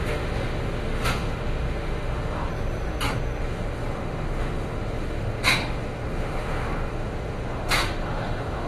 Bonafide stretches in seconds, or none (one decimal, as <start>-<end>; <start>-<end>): 2.5-3.4